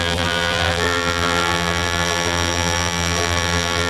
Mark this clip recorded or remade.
remade